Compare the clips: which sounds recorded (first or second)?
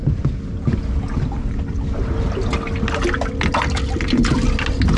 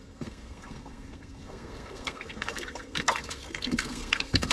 first